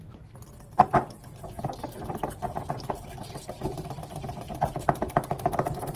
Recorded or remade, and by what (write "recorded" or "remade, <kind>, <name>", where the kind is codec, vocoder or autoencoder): recorded